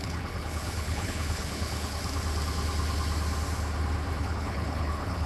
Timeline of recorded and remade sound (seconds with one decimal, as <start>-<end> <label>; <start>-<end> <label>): 0.0-2.0 remade; 2.0-4.2 recorded; 4.2-5.3 remade